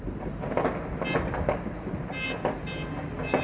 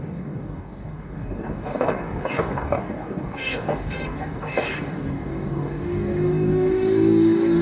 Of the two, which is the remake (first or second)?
second